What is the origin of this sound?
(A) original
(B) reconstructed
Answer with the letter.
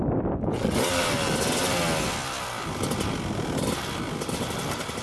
A